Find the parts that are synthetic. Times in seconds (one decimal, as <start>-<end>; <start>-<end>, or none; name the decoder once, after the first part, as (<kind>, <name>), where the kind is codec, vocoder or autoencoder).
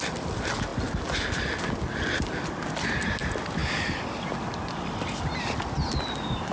none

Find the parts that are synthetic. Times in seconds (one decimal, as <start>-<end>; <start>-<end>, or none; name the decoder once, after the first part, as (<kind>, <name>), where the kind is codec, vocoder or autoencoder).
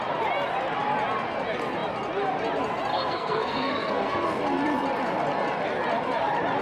2.9-4.4 (codec, SNAC)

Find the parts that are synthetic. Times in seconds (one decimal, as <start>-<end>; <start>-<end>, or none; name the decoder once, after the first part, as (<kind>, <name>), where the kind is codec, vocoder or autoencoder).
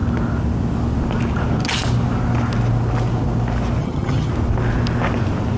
3.8-4.3 (vocoder, HiFi-GAN)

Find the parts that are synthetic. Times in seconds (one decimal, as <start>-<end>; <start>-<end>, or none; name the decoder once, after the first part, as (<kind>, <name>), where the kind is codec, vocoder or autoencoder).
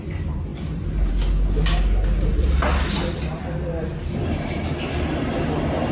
0.5-1.1 (vocoder, BigVGAN v2)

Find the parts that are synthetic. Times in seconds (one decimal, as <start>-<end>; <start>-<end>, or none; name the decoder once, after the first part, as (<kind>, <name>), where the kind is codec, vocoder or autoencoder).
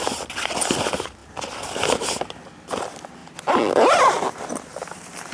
none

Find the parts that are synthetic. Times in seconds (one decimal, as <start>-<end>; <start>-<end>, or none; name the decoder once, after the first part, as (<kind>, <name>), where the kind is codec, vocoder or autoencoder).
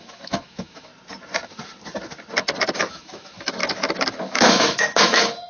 0.0-0.9 (autoencoder, DAC-VAE); 2.8-3.6; 4.2-5.5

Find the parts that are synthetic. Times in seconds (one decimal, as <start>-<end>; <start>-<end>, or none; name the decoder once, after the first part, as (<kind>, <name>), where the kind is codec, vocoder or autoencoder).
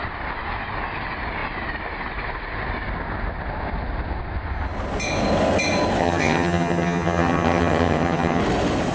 6.0-8.4 (vocoder, HiFi-GAN)